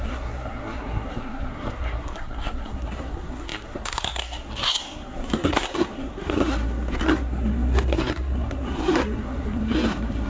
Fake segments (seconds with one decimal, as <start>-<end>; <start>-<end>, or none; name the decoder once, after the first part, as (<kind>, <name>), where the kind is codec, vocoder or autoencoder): 0.0-10.3 (codec, SNAC)